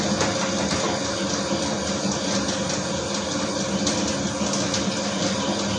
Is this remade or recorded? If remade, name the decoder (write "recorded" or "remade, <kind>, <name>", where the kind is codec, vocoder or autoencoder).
recorded